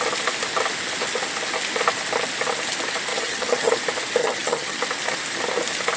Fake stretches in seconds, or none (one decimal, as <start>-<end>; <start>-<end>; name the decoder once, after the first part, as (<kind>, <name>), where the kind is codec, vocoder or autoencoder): 3.1-3.7 (vocoder, HiFi-GAN); 4.2-4.8